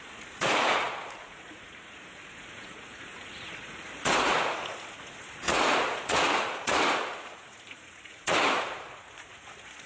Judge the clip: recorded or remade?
remade